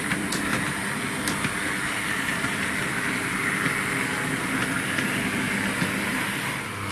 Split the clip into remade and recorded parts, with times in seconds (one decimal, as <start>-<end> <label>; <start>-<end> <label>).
0.0-6.9 recorded